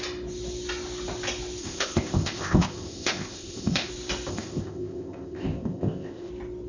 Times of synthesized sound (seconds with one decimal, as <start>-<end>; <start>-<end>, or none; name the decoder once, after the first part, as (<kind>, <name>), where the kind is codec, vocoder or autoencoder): 1.6-3.9 (codec, ZipCodec); 4.3-6.3